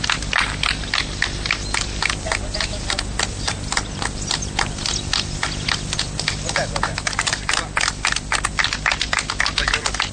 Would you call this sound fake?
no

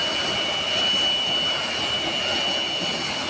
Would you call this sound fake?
no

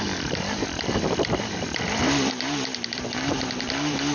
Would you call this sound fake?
yes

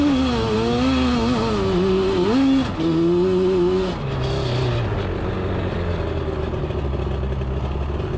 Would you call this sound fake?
no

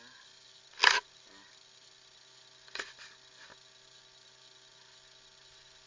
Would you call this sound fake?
no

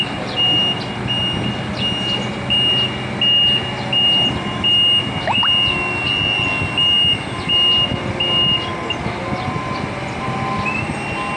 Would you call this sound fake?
no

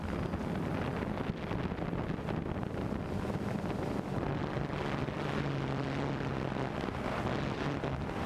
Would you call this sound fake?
no